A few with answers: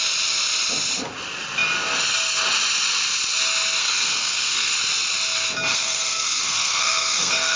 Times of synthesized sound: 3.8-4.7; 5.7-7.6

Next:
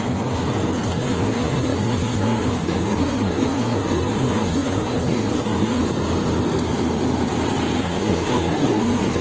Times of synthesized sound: 0.0-5.8; 7.8-9.2

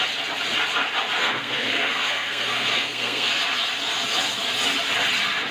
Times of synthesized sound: 1.2-3.4